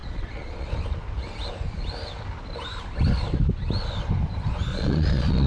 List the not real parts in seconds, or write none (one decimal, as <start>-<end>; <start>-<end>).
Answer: 0.0-0.7; 4.7-5.5